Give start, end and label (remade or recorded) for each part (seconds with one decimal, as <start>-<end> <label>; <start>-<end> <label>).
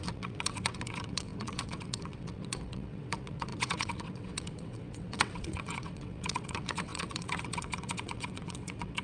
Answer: 0.0-9.0 remade